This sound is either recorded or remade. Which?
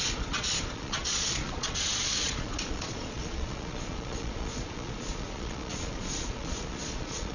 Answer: remade